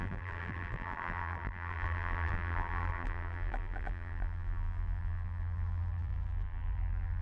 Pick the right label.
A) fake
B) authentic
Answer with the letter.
A